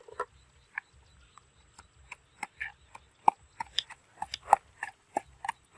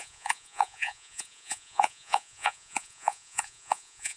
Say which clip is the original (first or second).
first